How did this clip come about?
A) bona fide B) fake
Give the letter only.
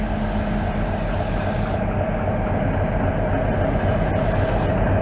A